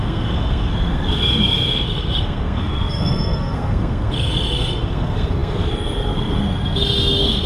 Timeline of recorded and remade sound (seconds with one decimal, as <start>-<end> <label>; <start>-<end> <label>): 0.0-7.5 remade